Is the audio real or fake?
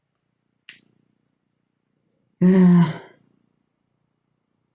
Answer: real